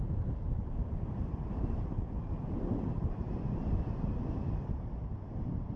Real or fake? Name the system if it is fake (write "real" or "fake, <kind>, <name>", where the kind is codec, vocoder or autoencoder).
fake, vocoder, BigVGAN v2